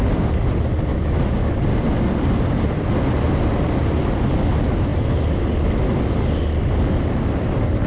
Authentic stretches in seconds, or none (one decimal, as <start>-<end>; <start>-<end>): 0.0-0.9; 1.5-7.9